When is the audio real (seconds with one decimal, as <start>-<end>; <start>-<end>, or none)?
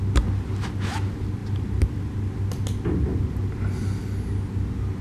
0.0-1.4; 2.0-5.0